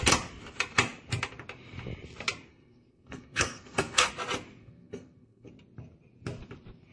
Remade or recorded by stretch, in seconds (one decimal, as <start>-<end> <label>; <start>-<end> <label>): 0.0-2.5 recorded; 2.5-4.1 remade; 4.1-4.6 recorded; 4.6-5.5 remade; 5.5-6.9 recorded